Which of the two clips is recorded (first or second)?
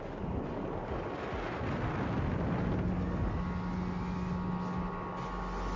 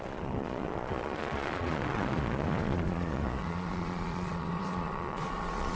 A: first